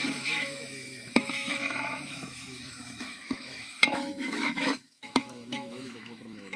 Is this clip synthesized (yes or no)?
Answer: yes